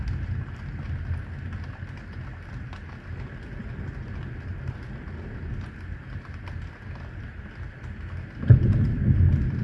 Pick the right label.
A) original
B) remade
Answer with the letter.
A